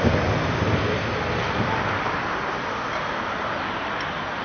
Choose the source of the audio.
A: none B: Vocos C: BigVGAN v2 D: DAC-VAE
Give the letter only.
A